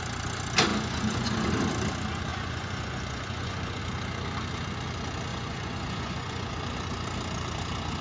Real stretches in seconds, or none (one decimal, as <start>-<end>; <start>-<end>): 0.0-0.7; 1.5-2.3; 3.8-5.3; 6.5-8.0